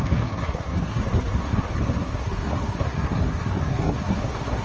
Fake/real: fake